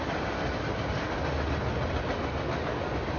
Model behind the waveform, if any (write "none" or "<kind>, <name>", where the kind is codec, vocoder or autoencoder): none